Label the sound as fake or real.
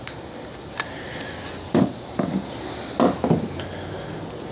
real